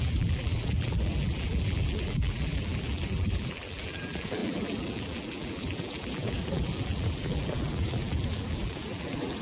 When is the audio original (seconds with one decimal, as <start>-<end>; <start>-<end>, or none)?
none